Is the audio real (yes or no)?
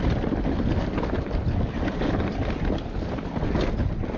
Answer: yes